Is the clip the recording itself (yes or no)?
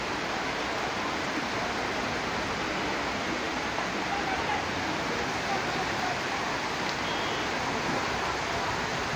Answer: yes